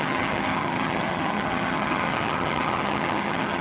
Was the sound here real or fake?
fake